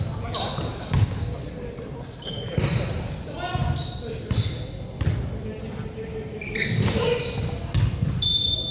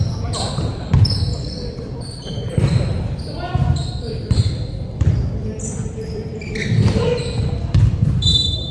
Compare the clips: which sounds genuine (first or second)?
first